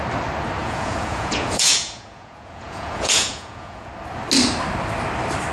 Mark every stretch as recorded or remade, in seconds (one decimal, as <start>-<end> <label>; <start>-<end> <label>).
0.0-0.6 recorded; 0.6-3.9 remade; 3.9-5.5 recorded

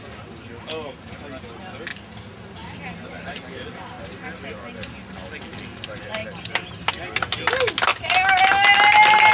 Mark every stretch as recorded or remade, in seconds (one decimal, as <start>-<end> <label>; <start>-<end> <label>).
0.0-9.3 recorded

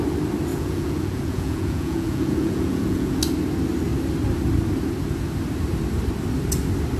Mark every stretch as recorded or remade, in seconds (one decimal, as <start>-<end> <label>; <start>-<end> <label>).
0.0-0.5 recorded; 0.5-3.2 remade; 3.2-7.0 recorded

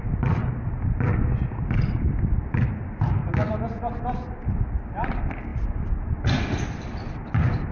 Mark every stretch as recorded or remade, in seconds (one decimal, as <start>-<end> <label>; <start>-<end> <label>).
0.0-7.7 recorded

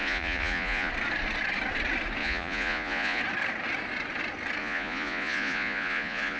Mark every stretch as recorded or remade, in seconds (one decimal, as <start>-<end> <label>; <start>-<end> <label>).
0.0-0.9 remade; 0.9-2.2 recorded; 2.2-3.2 remade; 3.2-4.6 recorded; 4.6-6.4 remade